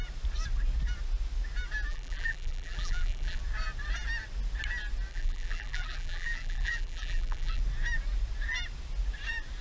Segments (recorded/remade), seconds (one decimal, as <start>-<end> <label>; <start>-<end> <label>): 0.0-1.9 recorded; 1.9-3.4 remade; 3.4-5.1 recorded; 5.1-7.6 remade; 7.6-9.6 recorded